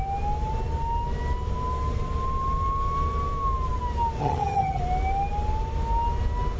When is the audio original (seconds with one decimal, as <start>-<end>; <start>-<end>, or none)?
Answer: 0.0-4.2; 4.8-6.6